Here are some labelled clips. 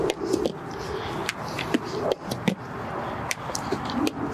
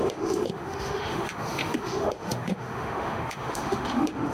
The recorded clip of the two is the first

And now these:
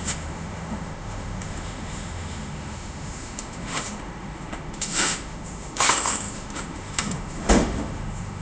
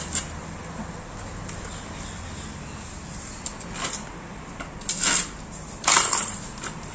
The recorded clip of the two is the second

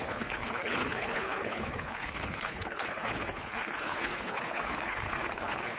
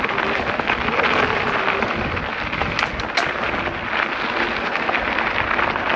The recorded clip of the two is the second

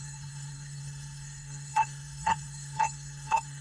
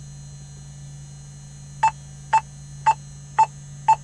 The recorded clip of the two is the second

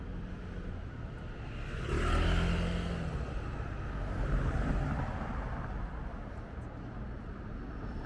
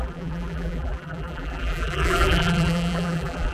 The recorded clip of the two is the first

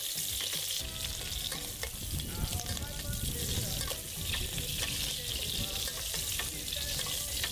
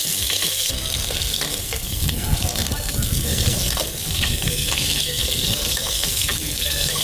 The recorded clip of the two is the first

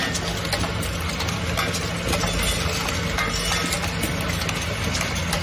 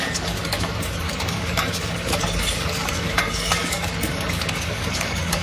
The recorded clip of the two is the first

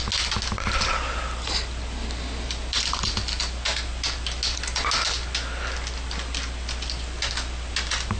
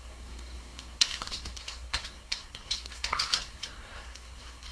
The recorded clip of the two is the first